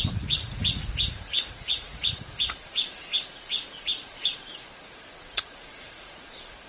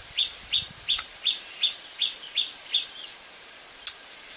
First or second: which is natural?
second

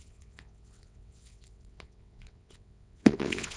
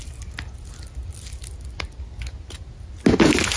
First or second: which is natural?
second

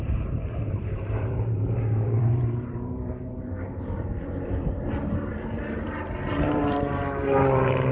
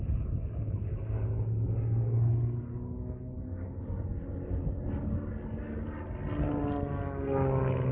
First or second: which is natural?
second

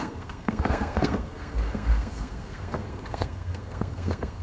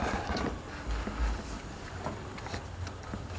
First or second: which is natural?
second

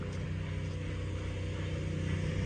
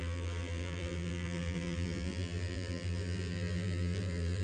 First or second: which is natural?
first